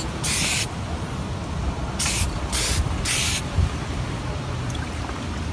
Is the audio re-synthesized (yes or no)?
yes